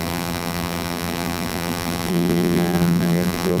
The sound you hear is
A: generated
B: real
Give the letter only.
A